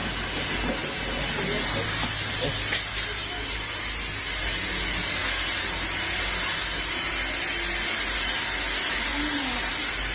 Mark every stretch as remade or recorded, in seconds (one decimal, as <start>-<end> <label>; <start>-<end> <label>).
0.0-10.1 recorded